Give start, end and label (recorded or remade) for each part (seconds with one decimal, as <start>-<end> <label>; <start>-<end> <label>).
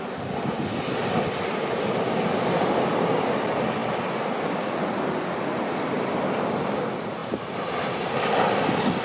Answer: 0.0-9.0 recorded